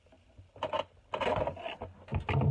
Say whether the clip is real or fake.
real